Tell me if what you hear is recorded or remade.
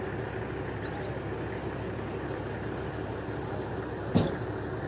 recorded